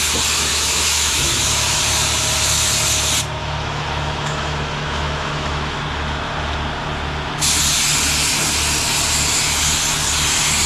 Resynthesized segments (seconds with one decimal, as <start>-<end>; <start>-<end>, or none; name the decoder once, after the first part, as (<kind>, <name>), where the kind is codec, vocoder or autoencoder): 0.5-1.8 (autoencoder, DAC-VAE); 3.4-5.8